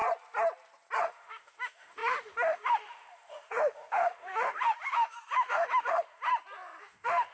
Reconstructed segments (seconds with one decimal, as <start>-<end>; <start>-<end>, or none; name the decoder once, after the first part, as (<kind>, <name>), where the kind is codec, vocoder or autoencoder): 1.0-6.3 (autoencoder, DAC-VAE); 6.8-7.3